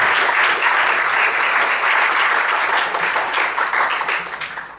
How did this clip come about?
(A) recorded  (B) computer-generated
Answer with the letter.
A